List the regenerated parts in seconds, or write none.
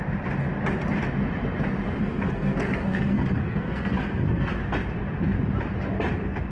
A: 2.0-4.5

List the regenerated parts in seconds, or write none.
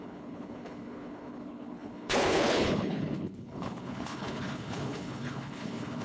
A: 0.0-6.0